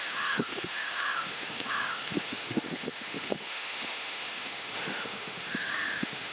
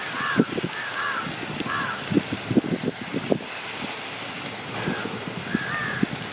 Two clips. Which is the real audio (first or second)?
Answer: second